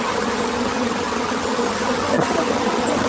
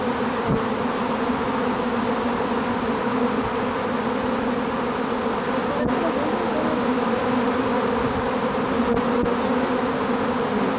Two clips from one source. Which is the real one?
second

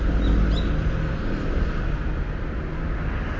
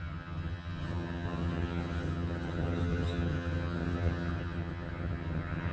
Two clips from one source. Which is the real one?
first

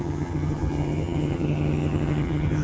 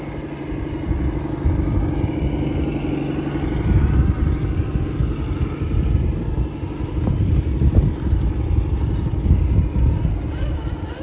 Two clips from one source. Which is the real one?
second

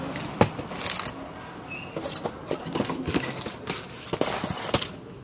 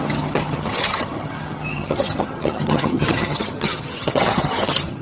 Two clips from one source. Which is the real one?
first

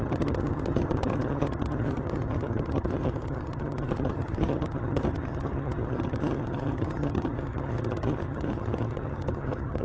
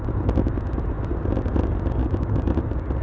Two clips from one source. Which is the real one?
second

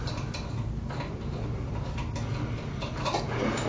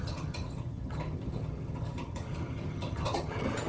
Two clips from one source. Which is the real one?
first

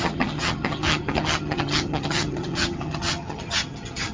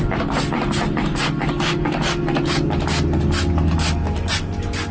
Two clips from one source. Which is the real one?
second